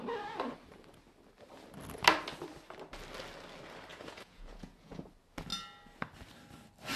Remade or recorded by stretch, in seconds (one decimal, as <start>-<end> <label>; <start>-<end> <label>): 0.0-3.9 recorded; 3.9-5.0 remade; 5.0-7.0 recorded